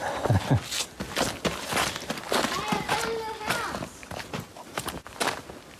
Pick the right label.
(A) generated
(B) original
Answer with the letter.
B